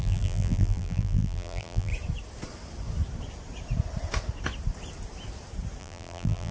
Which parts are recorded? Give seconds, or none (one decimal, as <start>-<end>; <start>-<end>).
1.9-5.8